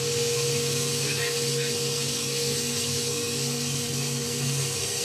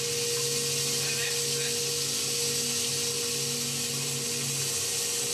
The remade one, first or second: first